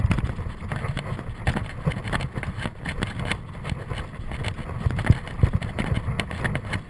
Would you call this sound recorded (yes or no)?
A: yes